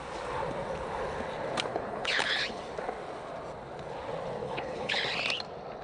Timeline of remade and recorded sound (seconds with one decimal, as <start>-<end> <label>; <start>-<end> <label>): 0.0-1.7 recorded; 1.7-2.6 remade; 2.6-4.4 recorded; 4.4-5.0 remade; 5.0-5.8 recorded